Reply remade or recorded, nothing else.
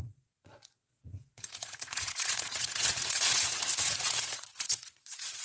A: remade